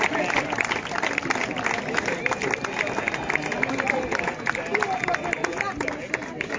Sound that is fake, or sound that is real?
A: real